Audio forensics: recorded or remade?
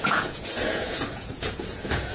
remade